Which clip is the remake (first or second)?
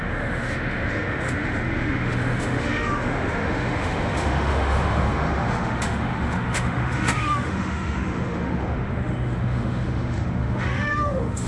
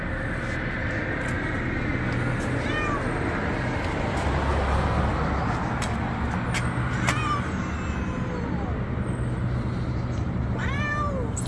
first